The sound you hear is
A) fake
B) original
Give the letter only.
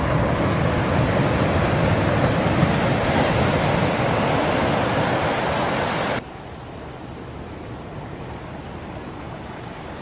B